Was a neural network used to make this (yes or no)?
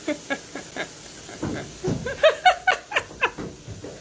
no